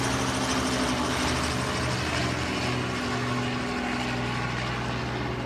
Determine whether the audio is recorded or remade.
recorded